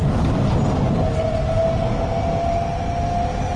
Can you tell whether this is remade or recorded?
recorded